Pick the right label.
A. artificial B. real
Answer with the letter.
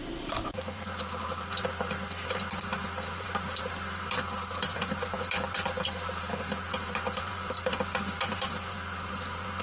A